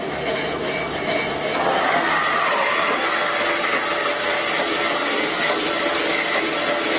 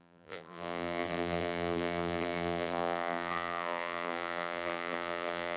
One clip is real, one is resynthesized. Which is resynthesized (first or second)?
second